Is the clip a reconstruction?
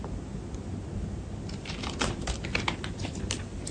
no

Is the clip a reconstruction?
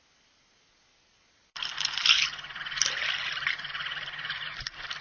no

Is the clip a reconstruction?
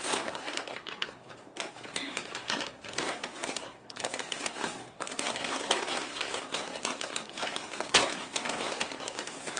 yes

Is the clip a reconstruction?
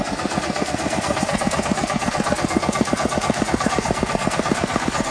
yes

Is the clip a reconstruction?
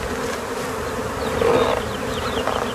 no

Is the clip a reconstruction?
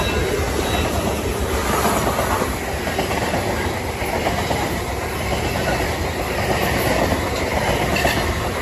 no